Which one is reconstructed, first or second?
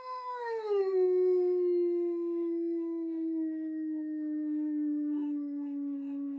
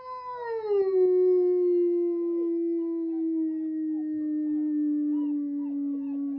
first